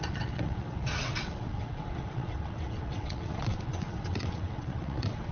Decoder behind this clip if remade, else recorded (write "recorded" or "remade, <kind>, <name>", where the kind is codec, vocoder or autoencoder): remade, vocoder, WaveNeXt